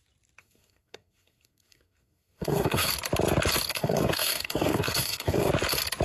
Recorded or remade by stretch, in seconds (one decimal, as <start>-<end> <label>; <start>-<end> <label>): 0.0-0.4 recorded; 0.4-2.9 remade; 2.9-3.7 recorded; 3.7-5.5 remade; 5.5-6.0 recorded